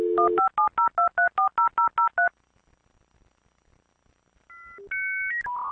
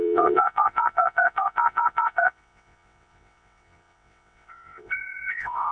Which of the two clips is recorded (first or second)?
first